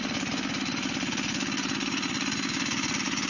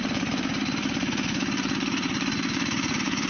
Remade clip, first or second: second